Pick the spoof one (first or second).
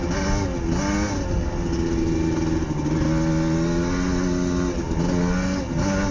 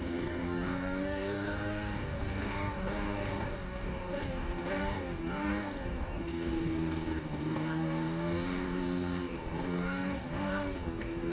second